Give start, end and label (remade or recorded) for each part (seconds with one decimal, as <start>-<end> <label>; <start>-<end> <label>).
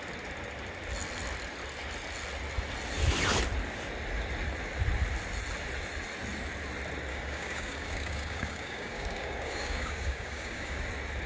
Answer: 0.0-7.1 recorded; 7.1-10.8 remade; 10.8-11.3 recorded